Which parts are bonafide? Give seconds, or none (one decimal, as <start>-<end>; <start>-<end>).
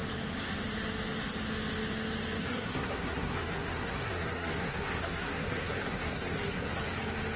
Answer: 0.0-2.4; 6.8-7.4